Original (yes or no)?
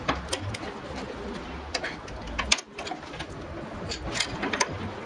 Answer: yes